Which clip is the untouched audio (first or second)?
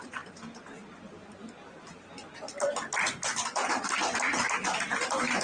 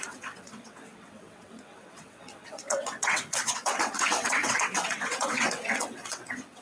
first